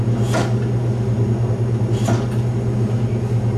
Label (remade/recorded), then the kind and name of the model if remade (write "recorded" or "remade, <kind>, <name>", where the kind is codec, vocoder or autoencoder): recorded